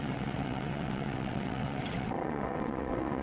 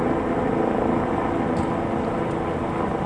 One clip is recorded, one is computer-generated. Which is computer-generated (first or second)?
first